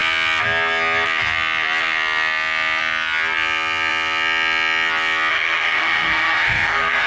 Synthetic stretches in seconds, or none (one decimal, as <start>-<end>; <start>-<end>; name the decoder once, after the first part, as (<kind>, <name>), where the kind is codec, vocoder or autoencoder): 5.3-7.1 (codec, SNAC)